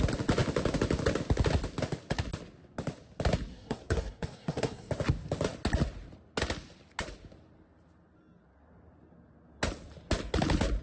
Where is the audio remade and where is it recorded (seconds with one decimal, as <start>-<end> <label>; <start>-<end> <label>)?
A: 0.0-3.5 recorded; 3.5-4.9 remade; 4.9-10.8 recorded